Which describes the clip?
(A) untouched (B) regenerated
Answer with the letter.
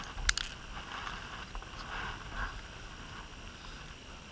A